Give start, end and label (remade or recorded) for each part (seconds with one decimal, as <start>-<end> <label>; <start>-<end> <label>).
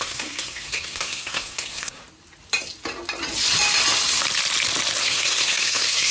0.0-2.0 remade; 2.0-5.0 recorded; 5.0-6.1 remade